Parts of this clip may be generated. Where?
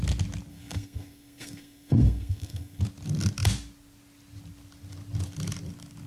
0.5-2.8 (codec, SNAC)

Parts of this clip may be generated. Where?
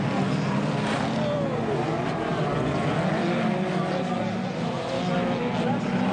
none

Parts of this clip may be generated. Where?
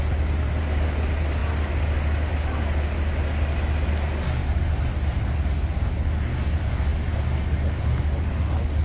4.4-5.2 (vocoder, BigVGAN v2)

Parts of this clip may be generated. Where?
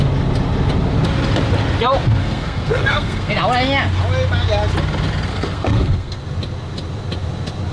2.2-3.3 (codec, SNAC); 5.3-6.2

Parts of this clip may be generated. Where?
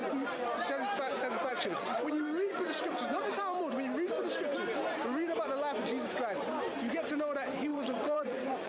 1.5-3.3 (vocoder, WaveNeXt); 7.7-8.7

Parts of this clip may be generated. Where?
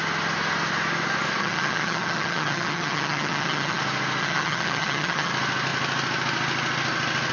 1.4-3.8 (vocoder, HiFi-GAN); 4.2-5.3